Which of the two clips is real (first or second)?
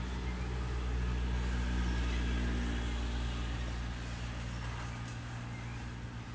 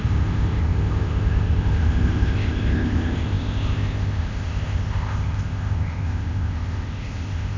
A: first